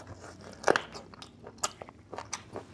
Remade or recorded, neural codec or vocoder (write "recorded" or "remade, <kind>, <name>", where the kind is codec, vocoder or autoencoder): recorded